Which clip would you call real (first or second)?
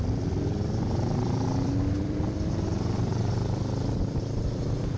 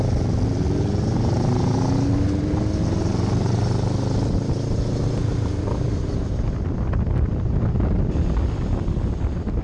second